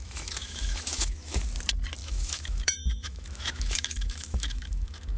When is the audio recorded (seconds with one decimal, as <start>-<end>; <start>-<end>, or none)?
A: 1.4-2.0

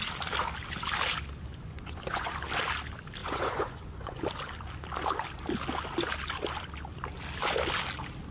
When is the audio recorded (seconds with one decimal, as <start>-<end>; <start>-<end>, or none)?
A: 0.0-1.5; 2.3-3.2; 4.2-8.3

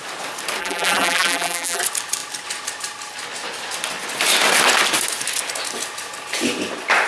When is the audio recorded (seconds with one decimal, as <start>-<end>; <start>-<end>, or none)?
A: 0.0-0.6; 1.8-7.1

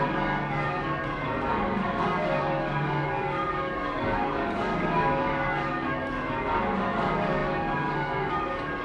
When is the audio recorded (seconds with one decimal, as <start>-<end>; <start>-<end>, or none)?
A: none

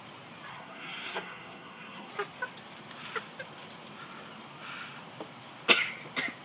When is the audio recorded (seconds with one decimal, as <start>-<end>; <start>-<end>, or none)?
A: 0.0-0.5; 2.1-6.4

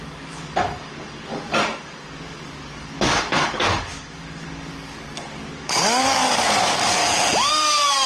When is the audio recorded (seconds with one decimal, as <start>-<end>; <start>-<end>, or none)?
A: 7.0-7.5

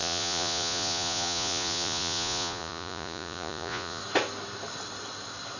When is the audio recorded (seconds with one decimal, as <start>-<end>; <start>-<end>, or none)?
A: 4.0-5.6